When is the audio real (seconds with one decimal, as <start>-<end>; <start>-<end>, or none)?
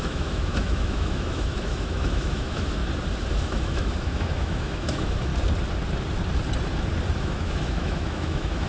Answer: 2.8-3.3; 5.3-7.2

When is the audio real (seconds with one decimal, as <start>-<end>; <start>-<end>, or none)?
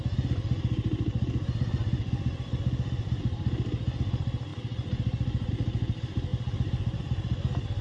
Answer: 0.0-7.8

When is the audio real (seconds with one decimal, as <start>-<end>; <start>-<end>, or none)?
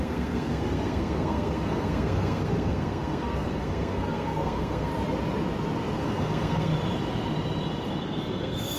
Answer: 4.9-6.0; 6.7-8.0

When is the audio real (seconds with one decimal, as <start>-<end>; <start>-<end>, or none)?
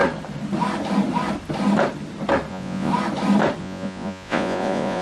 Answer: 0.0-2.5; 2.9-3.6